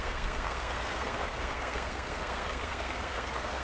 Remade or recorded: remade